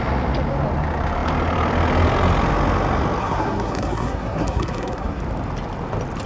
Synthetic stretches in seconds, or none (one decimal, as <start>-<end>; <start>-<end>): 3.2-5.2